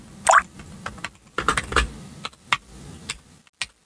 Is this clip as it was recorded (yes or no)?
yes